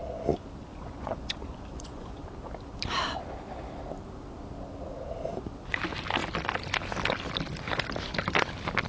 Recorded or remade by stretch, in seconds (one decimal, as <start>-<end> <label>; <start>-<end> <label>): 0.0-0.7 recorded; 0.7-2.2 remade; 2.2-8.9 recorded